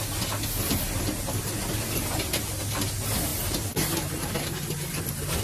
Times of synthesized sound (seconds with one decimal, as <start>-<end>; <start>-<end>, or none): none